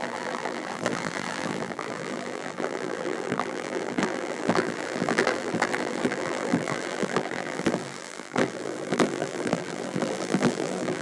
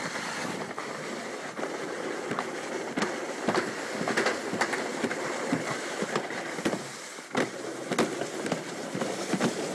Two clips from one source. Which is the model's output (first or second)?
first